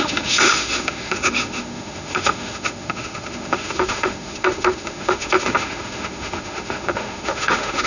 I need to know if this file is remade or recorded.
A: remade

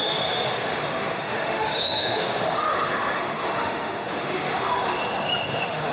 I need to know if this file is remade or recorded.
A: remade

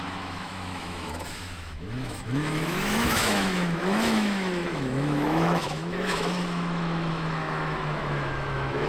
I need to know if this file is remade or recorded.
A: remade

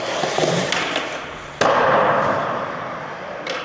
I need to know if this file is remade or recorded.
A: recorded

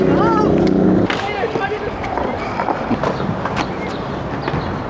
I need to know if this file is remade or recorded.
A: recorded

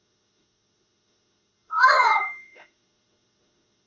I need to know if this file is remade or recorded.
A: remade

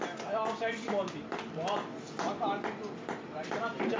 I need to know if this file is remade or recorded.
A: recorded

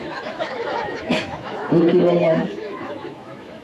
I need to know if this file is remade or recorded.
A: remade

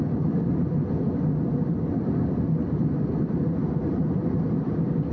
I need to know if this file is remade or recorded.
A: recorded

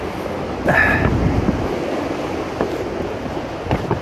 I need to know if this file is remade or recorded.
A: recorded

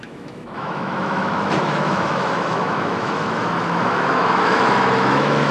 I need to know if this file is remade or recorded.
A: remade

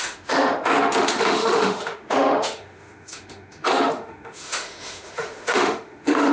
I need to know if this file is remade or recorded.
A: remade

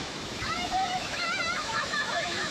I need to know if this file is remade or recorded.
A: remade